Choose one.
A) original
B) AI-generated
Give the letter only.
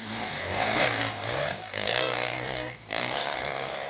B